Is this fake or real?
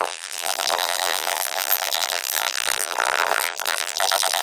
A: fake